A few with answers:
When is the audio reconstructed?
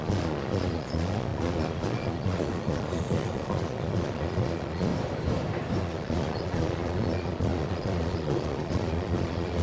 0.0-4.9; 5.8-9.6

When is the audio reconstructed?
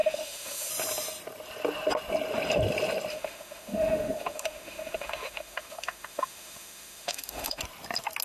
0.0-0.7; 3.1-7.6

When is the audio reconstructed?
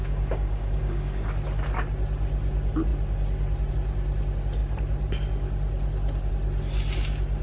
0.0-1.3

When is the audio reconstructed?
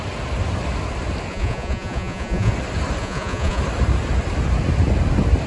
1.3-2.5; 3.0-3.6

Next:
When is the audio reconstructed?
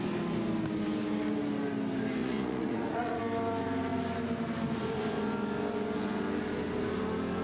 2.2-3.2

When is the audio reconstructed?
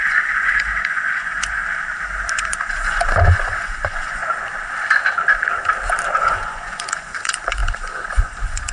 0.0-1.6; 2.3-4.2; 6.2-8.7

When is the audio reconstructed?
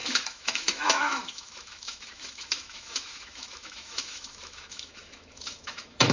0.0-6.1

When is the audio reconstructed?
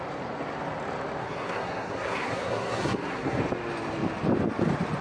1.2-3.4